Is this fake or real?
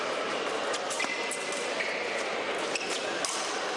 real